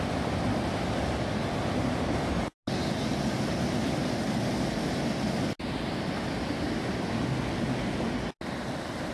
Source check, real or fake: real